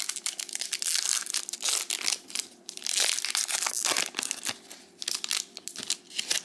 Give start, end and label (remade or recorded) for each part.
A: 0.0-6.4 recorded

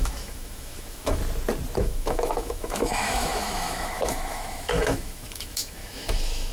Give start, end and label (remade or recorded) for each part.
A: 0.0-1.2 remade; 1.2-1.8 recorded; 1.8-6.5 remade

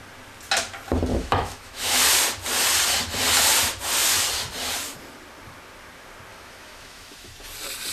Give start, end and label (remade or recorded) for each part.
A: 0.0-1.1 recorded; 1.1-2.0 remade; 2.0-6.3 recorded; 6.3-7.3 remade; 7.3-7.9 recorded

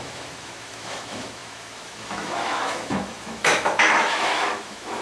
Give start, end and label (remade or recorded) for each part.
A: 0.0-5.0 remade

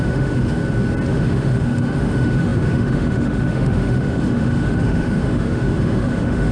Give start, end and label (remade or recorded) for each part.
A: 0.0-0.6 remade; 0.6-1.1 recorded; 1.1-6.5 remade

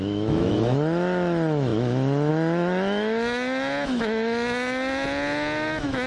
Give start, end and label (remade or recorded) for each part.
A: 0.0-6.1 remade

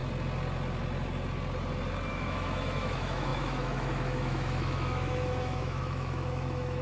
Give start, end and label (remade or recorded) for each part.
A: 0.0-2.1 recorded; 2.1-6.8 remade